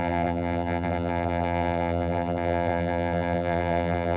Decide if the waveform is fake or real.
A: fake